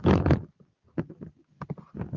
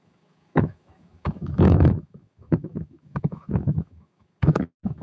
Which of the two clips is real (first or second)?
first